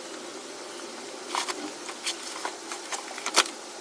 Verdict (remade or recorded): recorded